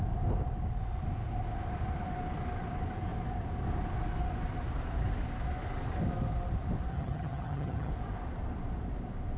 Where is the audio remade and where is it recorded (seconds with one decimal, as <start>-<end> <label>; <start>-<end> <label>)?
0.0-6.9 recorded; 6.9-7.9 remade; 7.9-9.4 recorded

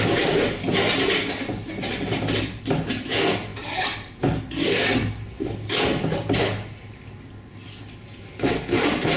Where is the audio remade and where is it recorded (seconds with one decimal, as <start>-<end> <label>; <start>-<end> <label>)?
0.0-9.2 recorded

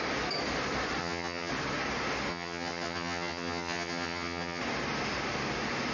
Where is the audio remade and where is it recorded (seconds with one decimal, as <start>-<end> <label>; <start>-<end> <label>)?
0.0-1.0 recorded; 1.0-1.5 remade; 1.5-2.3 recorded; 2.3-4.6 remade; 4.6-5.9 recorded

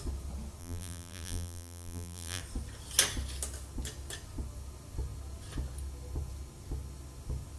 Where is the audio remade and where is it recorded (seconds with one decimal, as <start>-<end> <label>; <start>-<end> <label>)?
0.0-0.6 recorded; 0.6-2.4 remade; 2.4-7.6 recorded